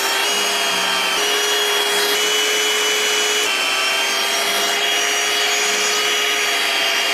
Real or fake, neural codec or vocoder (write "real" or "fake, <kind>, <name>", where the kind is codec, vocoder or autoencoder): real